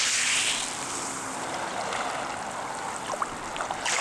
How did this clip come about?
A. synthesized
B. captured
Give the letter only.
B